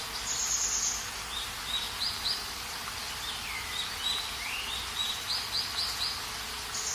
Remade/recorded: recorded